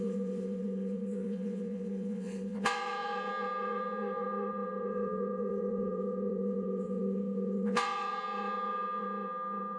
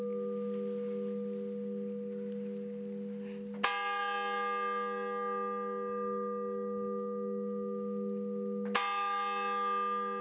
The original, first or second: second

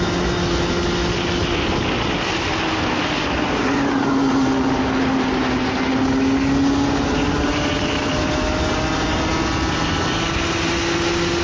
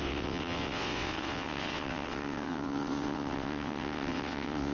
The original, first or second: first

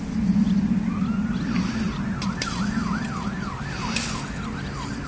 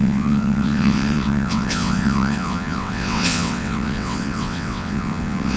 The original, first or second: first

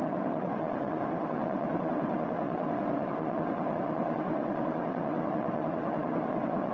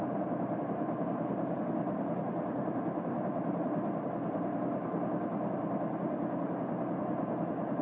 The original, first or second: second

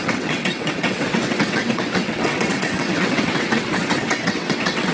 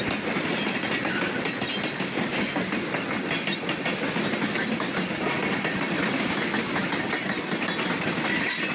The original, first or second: second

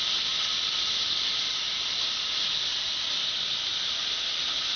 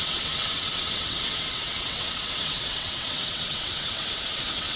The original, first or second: first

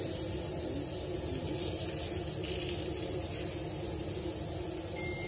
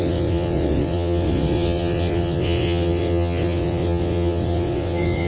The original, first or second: first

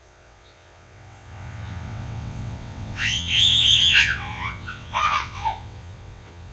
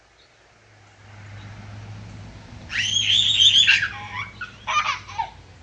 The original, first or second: second